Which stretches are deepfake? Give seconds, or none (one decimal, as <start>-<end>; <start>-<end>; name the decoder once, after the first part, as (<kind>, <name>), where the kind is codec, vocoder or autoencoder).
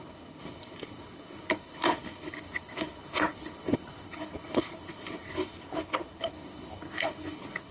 0.0-7.7 (codec, HILCodec)